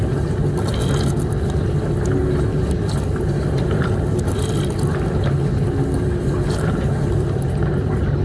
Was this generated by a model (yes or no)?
no